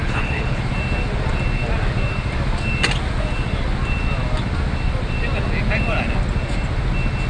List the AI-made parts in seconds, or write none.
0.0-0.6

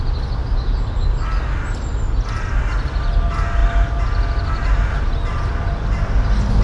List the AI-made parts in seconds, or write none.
none

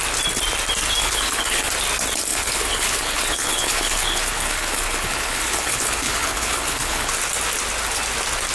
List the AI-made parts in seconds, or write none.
1.0-1.7; 2.3-7.1

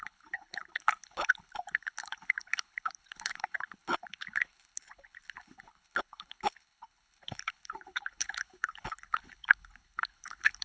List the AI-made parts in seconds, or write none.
0.0-10.6

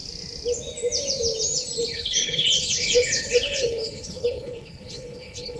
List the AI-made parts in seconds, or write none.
1.9-5.6

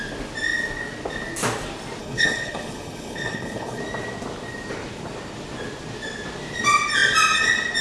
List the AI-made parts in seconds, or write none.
2.0-3.8